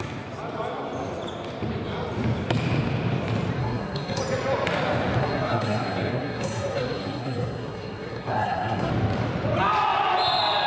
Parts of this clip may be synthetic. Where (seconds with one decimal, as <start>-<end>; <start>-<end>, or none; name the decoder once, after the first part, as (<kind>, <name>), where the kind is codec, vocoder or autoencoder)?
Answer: 3.6-4.2 (codec, SNAC); 5.2-8.9